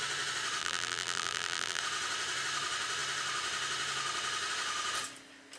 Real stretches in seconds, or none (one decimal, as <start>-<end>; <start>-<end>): 0.0-0.6; 1.8-5.6